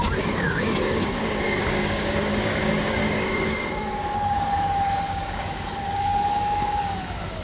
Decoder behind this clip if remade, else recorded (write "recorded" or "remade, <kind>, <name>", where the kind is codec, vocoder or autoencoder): remade, codec, DAC